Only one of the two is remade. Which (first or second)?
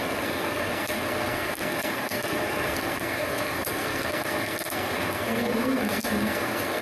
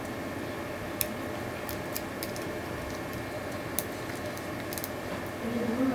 first